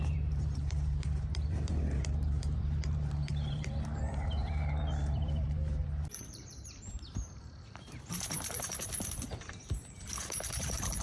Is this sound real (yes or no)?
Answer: no